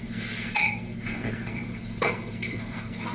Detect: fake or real fake